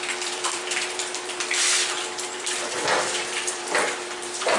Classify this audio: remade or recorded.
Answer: remade